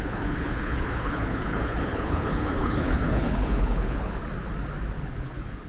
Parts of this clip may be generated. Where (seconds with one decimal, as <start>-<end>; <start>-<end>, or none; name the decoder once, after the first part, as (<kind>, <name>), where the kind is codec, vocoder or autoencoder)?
0.0-4.2 (codec, HILCodec); 5.0-5.7